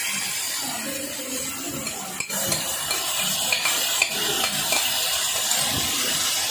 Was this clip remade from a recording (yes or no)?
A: no